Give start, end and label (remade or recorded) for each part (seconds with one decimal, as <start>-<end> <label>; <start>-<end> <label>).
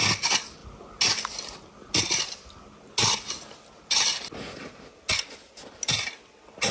0.0-6.7 recorded